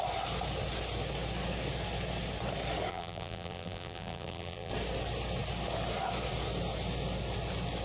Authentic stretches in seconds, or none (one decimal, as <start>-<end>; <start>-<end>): 0.0-2.9; 4.7-7.8